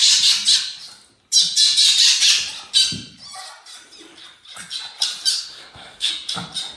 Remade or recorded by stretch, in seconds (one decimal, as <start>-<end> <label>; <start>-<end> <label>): 0.0-5.3 recorded; 5.3-6.1 remade; 6.1-6.8 recorded